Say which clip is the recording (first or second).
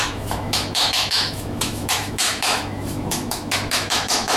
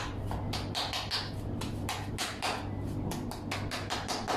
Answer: second